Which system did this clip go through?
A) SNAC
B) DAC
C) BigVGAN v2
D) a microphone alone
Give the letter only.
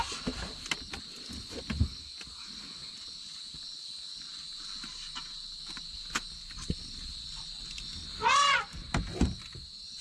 D